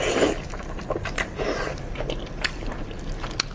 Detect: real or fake real